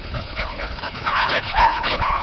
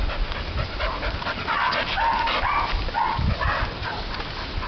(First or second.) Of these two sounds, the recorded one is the second